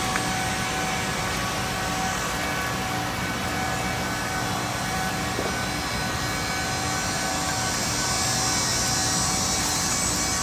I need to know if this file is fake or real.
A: real